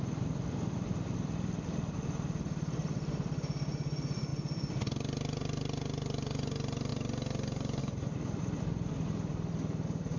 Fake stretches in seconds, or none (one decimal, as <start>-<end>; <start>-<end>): none